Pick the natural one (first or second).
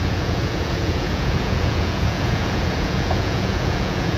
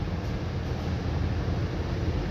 second